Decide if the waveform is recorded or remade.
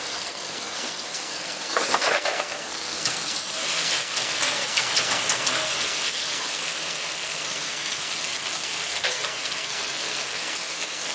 remade